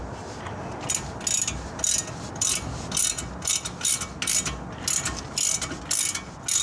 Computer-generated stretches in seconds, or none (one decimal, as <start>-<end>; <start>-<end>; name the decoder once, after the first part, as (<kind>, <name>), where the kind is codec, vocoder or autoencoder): none